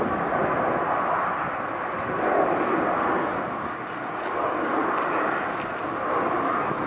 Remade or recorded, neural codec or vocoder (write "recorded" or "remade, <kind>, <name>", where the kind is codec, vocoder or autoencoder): recorded